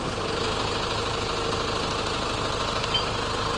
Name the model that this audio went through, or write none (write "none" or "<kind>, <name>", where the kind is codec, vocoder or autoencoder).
none